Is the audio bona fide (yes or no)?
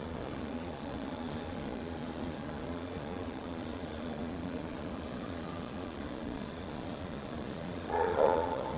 no